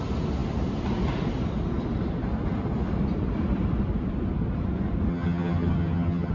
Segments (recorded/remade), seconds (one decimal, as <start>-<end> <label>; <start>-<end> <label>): 0.0-5.1 recorded; 5.1-6.3 remade